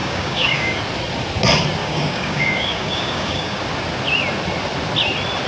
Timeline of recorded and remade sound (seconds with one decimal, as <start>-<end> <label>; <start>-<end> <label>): 0.0-0.8 remade; 0.8-1.8 recorded; 1.8-3.6 remade; 3.6-5.5 recorded

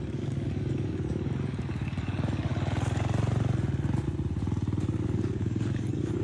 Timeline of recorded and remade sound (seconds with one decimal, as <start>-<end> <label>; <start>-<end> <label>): 0.0-2.5 remade; 2.5-5.1 recorded; 5.1-6.2 remade

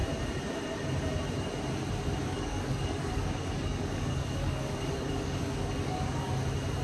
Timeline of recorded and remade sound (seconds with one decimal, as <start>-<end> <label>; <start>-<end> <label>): 0.0-2.2 recorded; 2.2-6.3 remade; 6.3-6.8 recorded

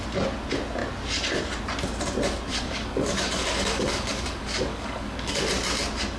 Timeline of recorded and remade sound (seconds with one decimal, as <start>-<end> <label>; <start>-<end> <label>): 0.0-2.5 recorded; 2.5-5.4 remade; 5.4-6.2 recorded

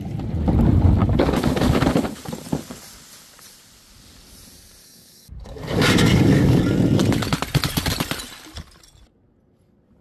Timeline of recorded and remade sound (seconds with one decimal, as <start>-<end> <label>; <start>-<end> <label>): 0.0-1.0 recorded; 1.0-1.8 remade; 1.8-4.8 recorded; 4.8-6.6 remade; 6.6-10.0 recorded

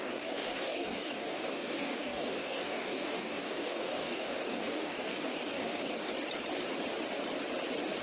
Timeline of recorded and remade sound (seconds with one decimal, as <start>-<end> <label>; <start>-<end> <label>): 0.0-6.1 remade; 6.1-8.0 recorded

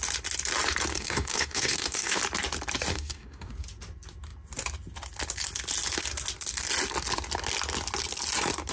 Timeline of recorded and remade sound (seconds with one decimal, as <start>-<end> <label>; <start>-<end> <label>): 0.0-0.9 recorded; 0.9-2.2 remade; 2.2-2.9 recorded; 2.9-3.5 remade; 3.5-8.7 recorded

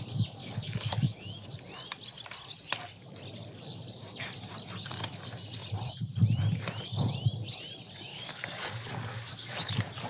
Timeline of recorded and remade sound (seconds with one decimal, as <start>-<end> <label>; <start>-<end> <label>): 0.0-0.4 recorded; 0.4-1.5 remade; 1.5-8.1 recorded; 8.1-9.7 remade; 9.7-10.1 recorded